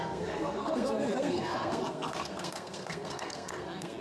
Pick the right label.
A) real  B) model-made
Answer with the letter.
B